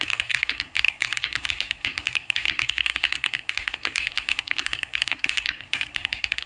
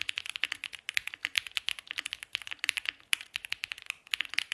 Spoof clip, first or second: first